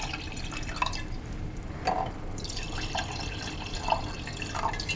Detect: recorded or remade recorded